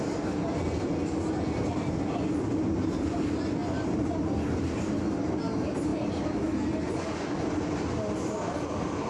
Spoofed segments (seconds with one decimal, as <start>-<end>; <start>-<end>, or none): none